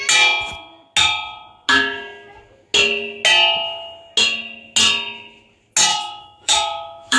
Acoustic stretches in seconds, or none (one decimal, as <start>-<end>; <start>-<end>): 0.0-5.9